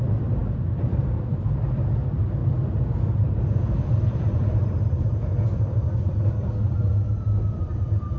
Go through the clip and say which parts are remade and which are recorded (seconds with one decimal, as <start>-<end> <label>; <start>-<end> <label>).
0.0-8.2 remade